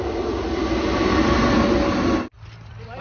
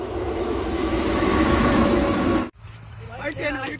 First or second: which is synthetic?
second